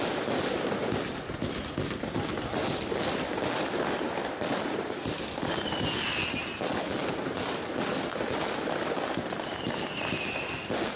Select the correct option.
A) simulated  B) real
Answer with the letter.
B